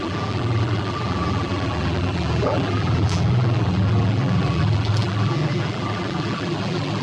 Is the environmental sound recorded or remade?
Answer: remade